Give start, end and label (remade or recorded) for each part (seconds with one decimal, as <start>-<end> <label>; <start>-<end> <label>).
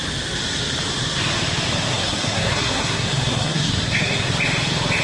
0.0-1.9 recorded; 1.9-4.3 remade; 4.3-5.0 recorded